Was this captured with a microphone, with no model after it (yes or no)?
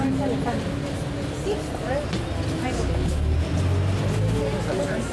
yes